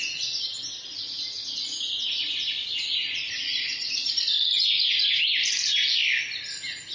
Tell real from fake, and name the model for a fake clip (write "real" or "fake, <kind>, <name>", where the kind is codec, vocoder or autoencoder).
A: real